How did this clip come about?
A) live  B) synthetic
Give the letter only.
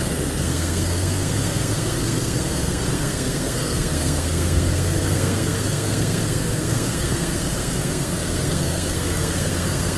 B